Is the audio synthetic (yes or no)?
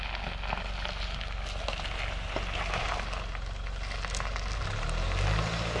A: no